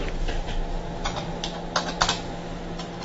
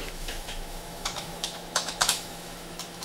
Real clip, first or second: first